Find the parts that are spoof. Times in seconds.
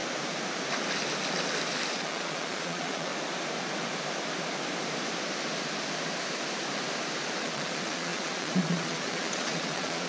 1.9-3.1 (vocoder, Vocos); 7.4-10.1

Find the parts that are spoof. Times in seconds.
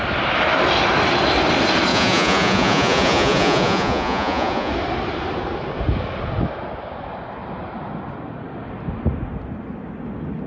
1.9-4.7 (vocoder, Vocos)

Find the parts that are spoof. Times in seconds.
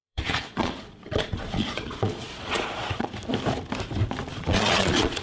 0.0-3.1 (vocoder, Vocos); 4.3-5.2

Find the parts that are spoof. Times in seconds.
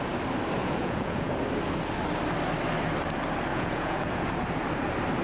0.6-1.3 (vocoder, Vocos); 3.5-4.3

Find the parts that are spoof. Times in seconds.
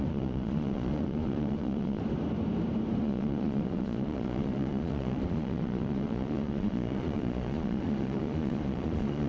0.0-2.0 (vocoder, Vocos); 3.0-9.3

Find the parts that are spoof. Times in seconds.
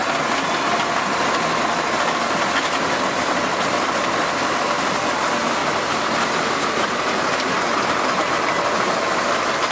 none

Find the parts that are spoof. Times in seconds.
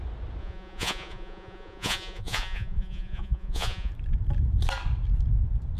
0.4-3.9 (vocoder, Vocos)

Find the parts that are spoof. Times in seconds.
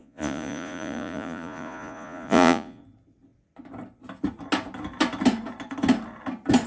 0.0-2.8 (vocoder, Vocos)